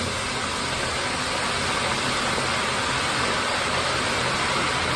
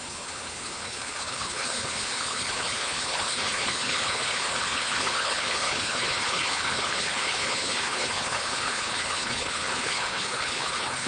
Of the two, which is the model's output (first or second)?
second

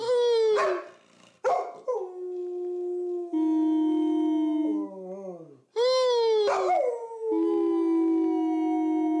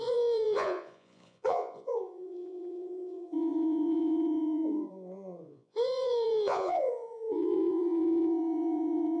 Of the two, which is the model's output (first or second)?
second